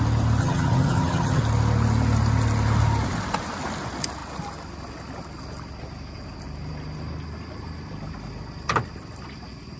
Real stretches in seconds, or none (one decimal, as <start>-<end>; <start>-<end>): 0.0-0.4; 1.4-9.8